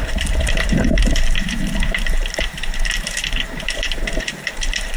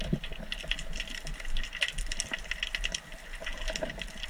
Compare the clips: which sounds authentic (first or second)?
second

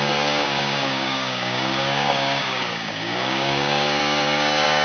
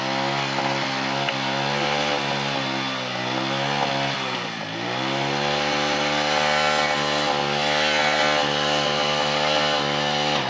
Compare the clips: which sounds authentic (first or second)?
second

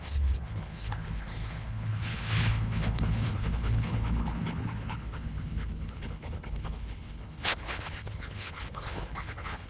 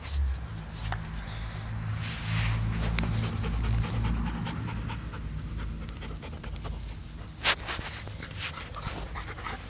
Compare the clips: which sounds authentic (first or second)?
second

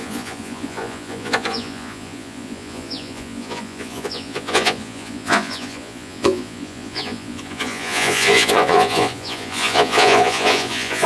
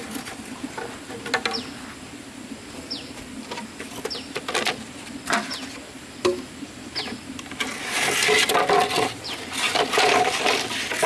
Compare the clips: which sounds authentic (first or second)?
second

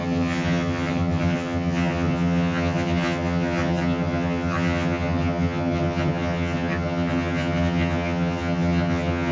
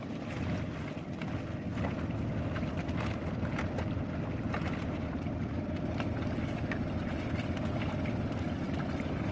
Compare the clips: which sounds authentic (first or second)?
second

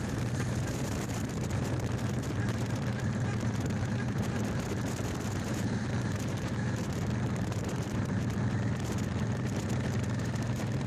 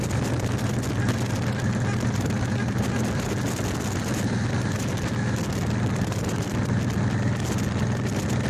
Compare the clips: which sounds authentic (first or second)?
second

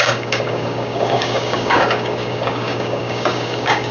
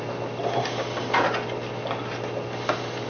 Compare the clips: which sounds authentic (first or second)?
second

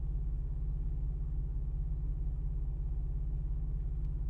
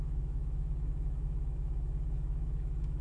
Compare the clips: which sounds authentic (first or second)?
first